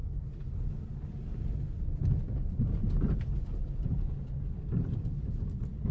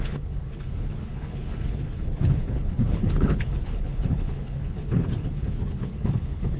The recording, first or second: first